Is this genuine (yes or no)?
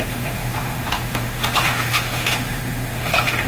no